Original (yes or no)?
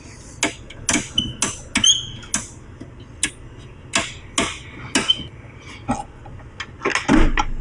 yes